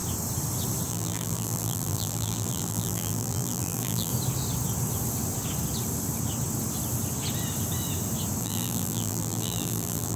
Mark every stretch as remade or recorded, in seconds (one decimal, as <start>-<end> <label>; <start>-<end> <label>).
0.0-0.9 recorded; 0.9-4.1 remade; 4.1-8.4 recorded; 8.4-10.2 remade